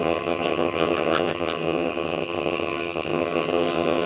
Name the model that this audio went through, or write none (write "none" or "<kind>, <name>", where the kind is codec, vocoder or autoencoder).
vocoder, HiFi-GAN